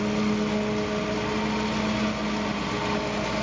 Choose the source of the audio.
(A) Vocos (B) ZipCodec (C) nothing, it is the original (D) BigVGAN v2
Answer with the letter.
C